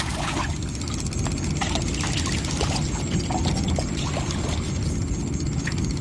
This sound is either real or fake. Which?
real